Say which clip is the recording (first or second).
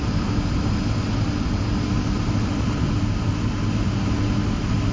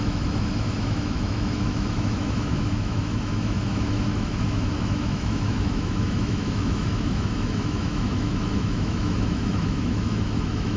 first